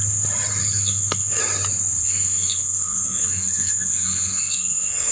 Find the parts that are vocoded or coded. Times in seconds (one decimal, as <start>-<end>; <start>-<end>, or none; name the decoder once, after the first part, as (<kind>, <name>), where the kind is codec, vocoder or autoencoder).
0.6-1.4 (codec, SNAC); 2.0-5.1